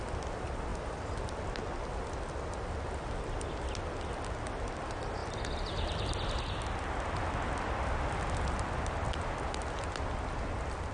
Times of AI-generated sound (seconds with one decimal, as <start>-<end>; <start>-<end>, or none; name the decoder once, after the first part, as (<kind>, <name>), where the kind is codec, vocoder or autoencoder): none